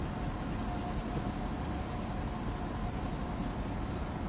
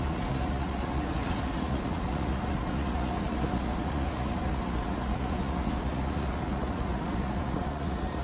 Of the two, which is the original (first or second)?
first